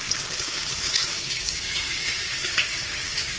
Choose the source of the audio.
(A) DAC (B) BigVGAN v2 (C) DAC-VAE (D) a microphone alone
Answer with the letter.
A